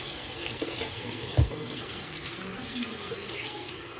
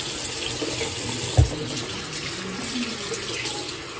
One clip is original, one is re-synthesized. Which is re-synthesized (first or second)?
first